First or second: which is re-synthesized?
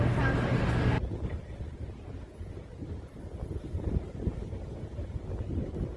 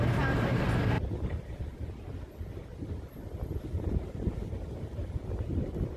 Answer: second